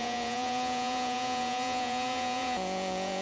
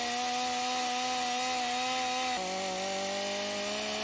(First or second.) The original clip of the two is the second